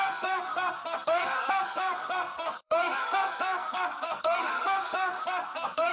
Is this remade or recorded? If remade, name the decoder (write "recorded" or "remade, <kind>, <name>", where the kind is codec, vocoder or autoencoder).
remade, codec, SNAC